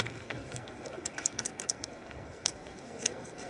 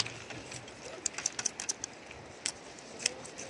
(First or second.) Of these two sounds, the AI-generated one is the first